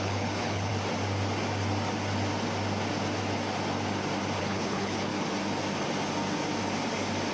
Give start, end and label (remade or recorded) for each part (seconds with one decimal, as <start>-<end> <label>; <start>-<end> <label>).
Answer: 0.0-0.7 remade; 0.7-4.4 recorded; 4.4-5.1 remade; 5.1-7.3 recorded